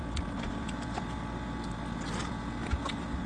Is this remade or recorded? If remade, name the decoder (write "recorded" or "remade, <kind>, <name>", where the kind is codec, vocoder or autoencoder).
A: recorded